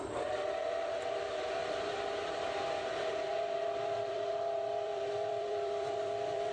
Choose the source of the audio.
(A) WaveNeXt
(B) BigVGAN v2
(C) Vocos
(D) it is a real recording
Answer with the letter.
B